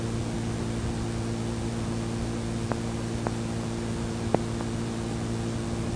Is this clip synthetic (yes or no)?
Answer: no